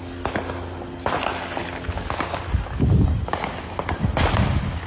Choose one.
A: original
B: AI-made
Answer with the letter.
A